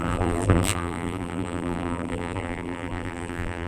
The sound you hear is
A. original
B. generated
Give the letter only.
B